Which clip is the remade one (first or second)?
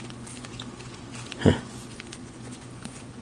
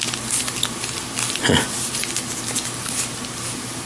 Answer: first